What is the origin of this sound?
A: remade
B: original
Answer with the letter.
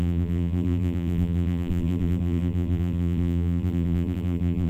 A